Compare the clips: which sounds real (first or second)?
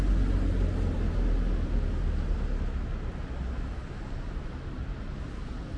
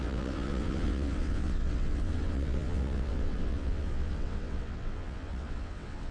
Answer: first